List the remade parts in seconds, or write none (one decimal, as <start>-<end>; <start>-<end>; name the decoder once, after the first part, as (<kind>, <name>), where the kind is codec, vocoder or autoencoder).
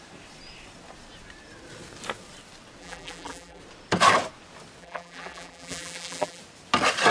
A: 2.8-3.6 (vocoder, BigVGAN v2); 4.8-6.4